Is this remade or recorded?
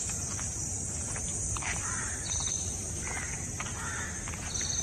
remade